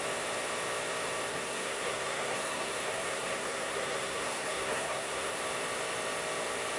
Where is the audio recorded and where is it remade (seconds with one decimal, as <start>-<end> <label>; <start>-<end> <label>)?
0.0-1.3 recorded; 1.3-5.4 remade; 5.4-6.8 recorded